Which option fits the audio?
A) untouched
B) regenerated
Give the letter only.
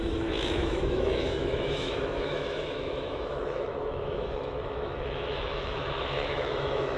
B